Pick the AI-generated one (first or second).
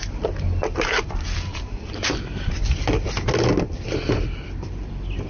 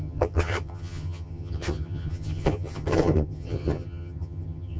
second